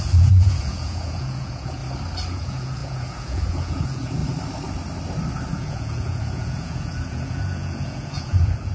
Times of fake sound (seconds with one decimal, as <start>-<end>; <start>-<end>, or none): 0.0-1.8; 2.3-4.2; 5.5-8.7